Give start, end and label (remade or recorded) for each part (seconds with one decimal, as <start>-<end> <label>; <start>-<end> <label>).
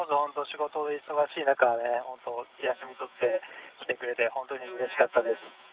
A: 0.0-2.6 recorded; 2.6-3.4 remade; 3.4-4.6 recorded; 4.6-5.7 remade